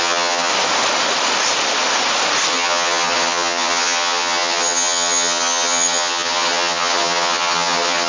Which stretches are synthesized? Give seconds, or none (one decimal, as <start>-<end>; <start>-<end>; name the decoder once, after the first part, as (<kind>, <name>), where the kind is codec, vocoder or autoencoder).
0.0-0.5 (vocoder, HiFi-GAN); 2.5-8.1